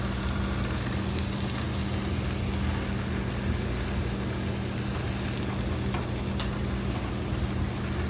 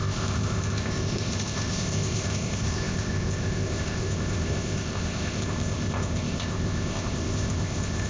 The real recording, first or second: first